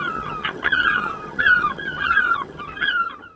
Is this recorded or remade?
remade